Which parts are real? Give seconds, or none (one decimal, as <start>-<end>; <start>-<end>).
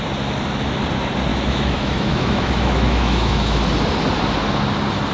0.0-1.3; 3.6-5.1